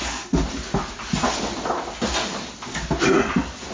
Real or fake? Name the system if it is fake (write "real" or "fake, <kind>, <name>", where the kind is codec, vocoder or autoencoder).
real